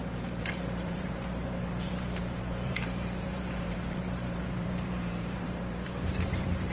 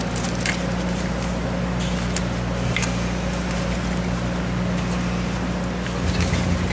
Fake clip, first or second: first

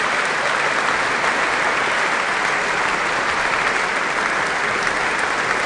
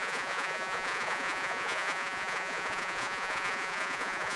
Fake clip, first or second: second